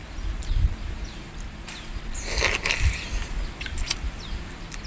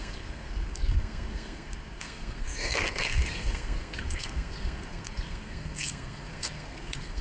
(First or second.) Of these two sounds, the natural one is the first